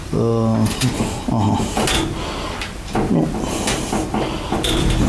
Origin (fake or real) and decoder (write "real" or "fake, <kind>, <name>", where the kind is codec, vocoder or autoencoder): real